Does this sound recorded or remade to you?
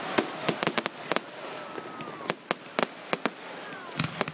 recorded